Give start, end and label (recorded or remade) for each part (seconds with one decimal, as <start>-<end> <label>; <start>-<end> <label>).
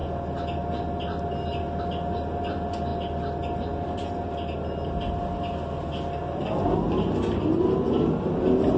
0.0-8.8 recorded